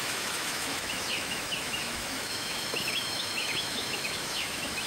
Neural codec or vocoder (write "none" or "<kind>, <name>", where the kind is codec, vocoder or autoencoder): autoencoder, DAC-VAE